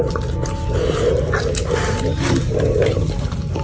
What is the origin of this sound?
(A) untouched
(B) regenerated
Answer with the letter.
A